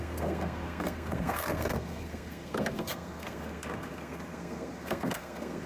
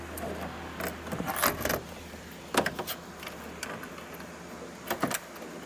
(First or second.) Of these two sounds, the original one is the second